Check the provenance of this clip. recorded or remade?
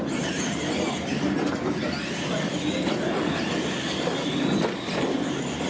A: recorded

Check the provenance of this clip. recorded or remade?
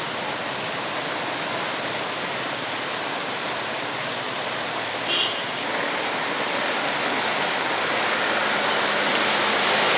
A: recorded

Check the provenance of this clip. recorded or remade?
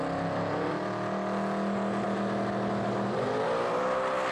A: recorded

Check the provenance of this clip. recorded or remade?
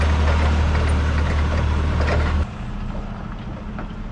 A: recorded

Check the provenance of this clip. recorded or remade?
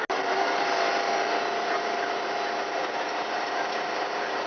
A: recorded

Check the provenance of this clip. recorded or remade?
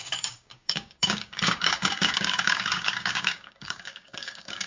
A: remade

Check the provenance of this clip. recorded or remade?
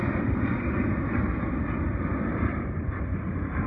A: recorded